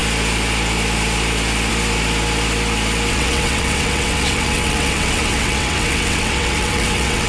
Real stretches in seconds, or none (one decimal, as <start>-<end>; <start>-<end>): 0.0-3.1